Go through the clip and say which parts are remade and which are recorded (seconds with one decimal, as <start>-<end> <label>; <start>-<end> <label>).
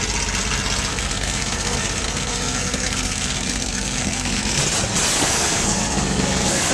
0.0-0.9 recorded; 0.9-4.6 remade; 4.6-5.2 recorded; 5.2-6.7 remade